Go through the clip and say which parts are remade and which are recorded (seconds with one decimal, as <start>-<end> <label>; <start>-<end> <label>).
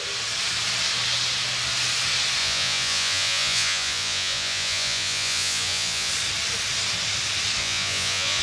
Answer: 0.0-2.4 recorded; 2.4-6.1 remade; 6.1-7.6 recorded; 7.6-8.4 remade